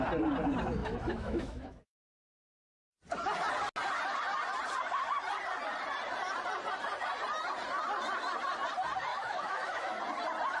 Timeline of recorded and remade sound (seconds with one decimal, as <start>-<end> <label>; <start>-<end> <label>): 0.0-0.8 recorded; 0.8-2.0 remade; 2.0-9.1 recorded; 9.1-10.0 remade; 10.0-10.6 recorded